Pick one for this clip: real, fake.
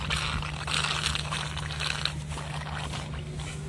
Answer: real